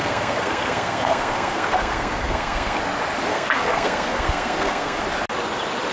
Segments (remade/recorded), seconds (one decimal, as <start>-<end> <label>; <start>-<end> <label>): 0.0-2.8 remade; 2.8-3.3 recorded; 3.3-5.0 remade; 5.0-5.9 recorded